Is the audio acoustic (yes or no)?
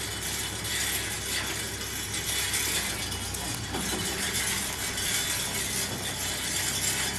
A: yes